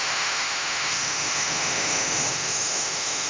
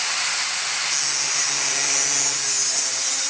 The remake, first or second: first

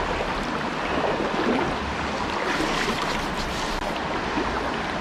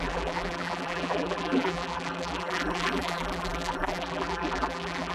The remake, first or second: second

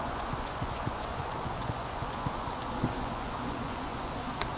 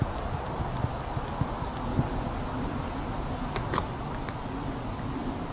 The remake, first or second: first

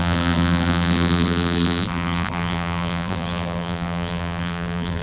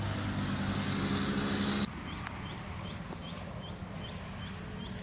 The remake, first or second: first